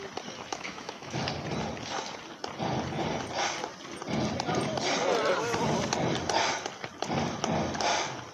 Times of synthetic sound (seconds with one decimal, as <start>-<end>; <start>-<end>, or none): 0.5-1.2